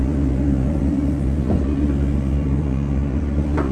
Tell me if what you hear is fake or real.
fake